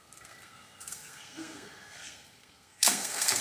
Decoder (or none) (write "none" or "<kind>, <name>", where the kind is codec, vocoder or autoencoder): codec, SNAC